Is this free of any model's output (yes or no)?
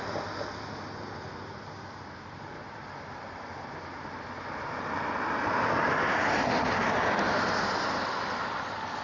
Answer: yes